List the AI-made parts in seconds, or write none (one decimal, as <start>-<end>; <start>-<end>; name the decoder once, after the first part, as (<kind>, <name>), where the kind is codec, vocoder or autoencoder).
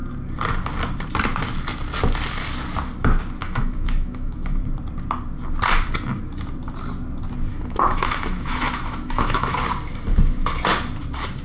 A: 3.4-4.6 (autoencoder, DAC-VAE); 7.5-9.6